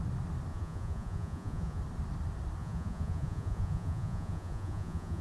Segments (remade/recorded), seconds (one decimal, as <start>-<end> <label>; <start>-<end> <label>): 0.0-0.5 recorded; 0.5-1.8 remade; 1.8-2.6 recorded; 2.6-5.2 remade